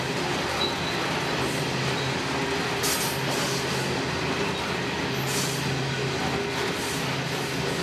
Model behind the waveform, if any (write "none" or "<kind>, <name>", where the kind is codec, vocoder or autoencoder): none